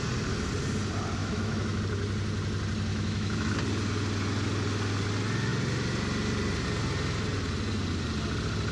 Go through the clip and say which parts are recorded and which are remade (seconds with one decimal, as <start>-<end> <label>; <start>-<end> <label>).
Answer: 0.0-1.2 recorded; 1.2-1.8 remade; 1.8-2.9 recorded; 2.9-3.5 remade; 3.5-8.7 recorded